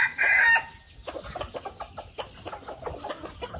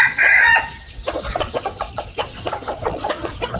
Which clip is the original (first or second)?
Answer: first